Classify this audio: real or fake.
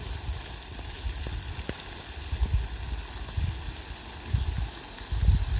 real